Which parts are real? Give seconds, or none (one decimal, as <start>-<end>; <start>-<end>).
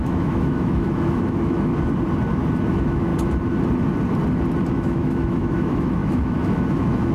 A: 1.7-2.7; 3.1-4.7